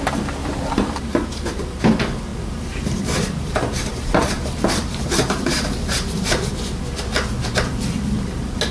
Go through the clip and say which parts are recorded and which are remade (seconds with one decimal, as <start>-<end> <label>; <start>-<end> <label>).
0.0-0.4 recorded; 0.4-1.8 remade; 1.8-2.3 recorded; 2.3-6.5 remade; 6.5-8.7 recorded